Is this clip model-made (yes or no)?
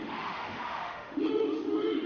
yes